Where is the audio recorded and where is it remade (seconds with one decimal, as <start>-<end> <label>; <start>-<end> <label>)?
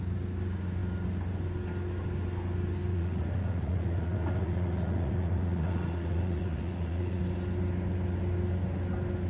0.0-2.9 recorded; 2.9-7.2 remade; 7.2-9.3 recorded